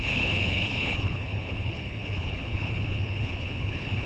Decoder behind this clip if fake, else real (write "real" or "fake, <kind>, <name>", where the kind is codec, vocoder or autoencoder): fake, codec, HILCodec